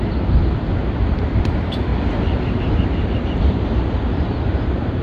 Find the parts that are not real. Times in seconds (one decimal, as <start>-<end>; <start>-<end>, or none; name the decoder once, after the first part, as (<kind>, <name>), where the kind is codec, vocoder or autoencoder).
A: 0.0-0.4 (vocoder, BigVGAN v2); 1.0-1.9; 2.4-5.0